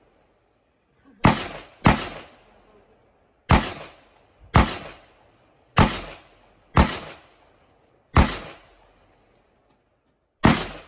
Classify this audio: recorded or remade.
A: recorded